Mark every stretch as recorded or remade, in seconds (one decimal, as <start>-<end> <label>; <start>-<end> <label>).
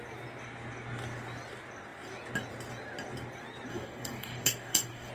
0.0-3.7 recorded; 3.7-5.1 remade